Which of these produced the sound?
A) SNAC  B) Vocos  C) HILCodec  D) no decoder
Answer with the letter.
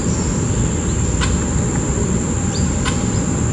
D